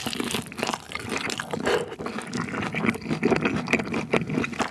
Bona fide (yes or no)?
yes